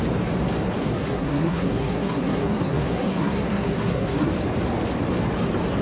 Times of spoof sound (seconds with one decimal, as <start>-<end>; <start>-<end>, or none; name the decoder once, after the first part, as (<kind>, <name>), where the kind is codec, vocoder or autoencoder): 0.8-4.3 (codec, SNAC)